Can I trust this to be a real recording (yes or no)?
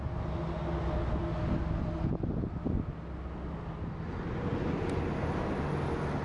yes